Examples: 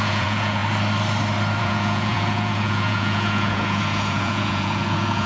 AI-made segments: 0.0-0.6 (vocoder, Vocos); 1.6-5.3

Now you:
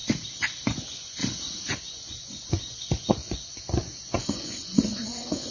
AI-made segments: 0.7-1.2 (vocoder, Vocos); 1.7-5.5

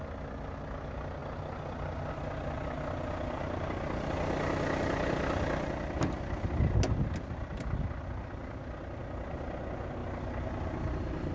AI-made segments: none

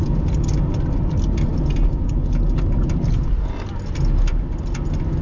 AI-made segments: none

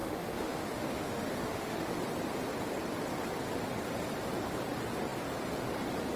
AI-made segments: 0.0-2.0 (autoencoder, DAC-VAE)

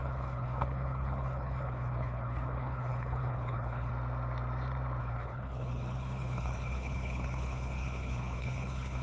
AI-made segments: 0.0-3.9 (codec, HILCodec); 5.0-9.0

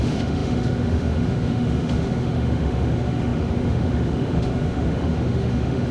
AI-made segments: 0.0-5.9 (autoencoder, DAC-VAE)